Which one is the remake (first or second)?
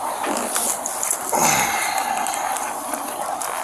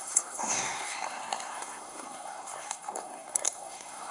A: second